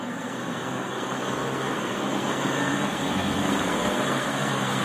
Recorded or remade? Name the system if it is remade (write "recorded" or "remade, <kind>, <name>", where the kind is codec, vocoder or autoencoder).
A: remade, codec, SNAC